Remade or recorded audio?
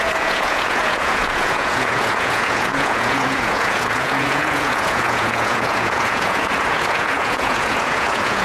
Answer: remade